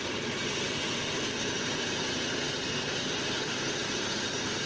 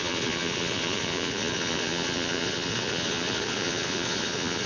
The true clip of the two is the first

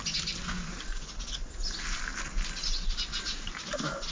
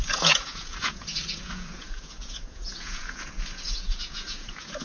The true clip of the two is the first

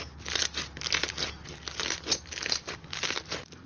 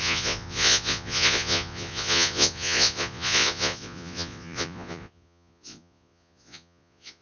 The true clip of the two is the first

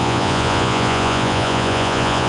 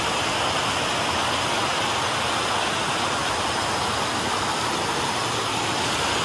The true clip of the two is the second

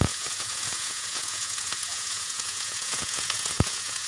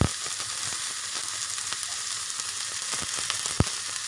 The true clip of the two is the second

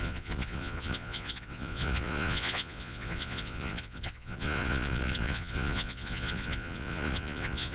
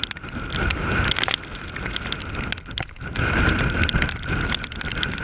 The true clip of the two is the second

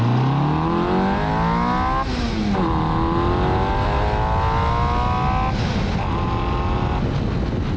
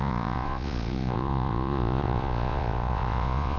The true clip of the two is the first